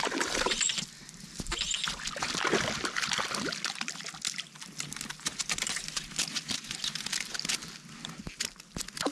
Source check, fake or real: real